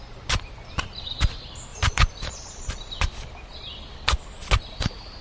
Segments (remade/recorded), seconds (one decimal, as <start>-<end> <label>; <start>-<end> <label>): 0.0-5.2 recorded